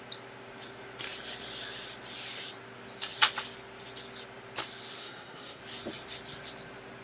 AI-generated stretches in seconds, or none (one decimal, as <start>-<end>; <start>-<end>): 5.0-5.6